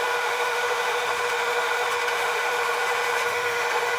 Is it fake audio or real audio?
fake